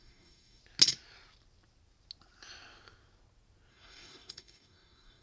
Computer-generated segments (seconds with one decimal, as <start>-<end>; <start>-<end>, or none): 0.0-0.6; 3.7-5.2